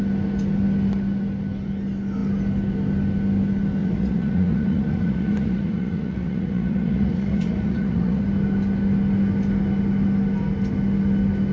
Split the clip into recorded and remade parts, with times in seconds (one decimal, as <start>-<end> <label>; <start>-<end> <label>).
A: 0.0-3.8 recorded; 3.8-8.2 remade; 8.2-11.5 recorded